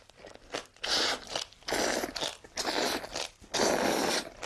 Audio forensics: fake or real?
real